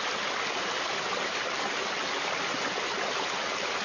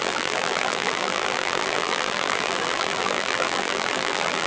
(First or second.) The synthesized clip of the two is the second